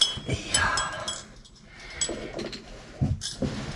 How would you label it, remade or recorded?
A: recorded